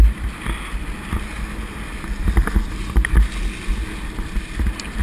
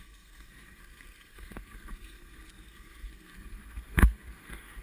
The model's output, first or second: second